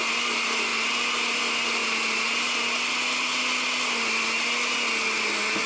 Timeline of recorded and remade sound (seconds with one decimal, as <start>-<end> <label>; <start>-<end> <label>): 0.0-5.7 recorded